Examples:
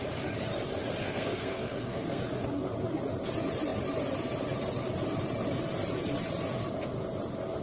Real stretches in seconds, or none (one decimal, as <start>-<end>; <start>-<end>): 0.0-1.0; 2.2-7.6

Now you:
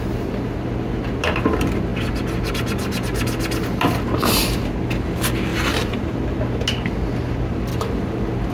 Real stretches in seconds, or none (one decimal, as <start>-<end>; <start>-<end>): 0.0-5.5; 6.4-8.5

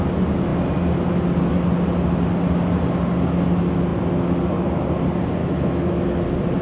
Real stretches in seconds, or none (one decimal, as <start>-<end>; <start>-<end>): 0.0-5.4; 6.0-6.6

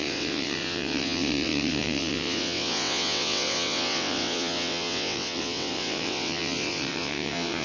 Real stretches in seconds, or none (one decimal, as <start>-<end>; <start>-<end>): none

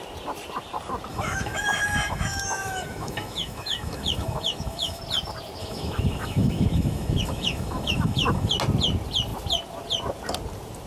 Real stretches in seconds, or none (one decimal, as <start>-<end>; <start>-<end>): 0.0-1.1; 5.0-5.6; 8.5-10.9